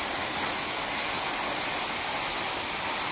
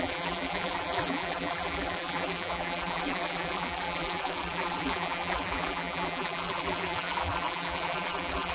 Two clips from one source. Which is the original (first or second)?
first